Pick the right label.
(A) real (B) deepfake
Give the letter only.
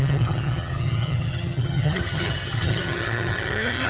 B